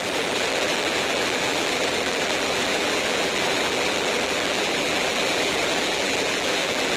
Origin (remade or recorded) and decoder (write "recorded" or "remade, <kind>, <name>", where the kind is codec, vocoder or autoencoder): remade, vocoder, BigVGAN v2